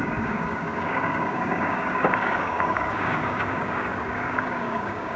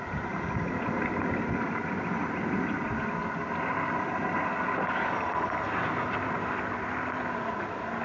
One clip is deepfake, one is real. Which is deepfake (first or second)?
first